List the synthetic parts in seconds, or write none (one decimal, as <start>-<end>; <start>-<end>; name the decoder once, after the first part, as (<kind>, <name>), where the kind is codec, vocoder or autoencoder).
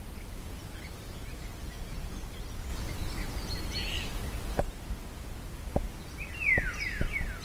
1.0-1.6 (vocoder, BigVGAN v2); 2.7-4.6